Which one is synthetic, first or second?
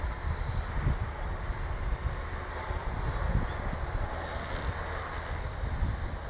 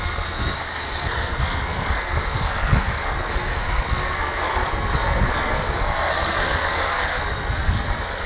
second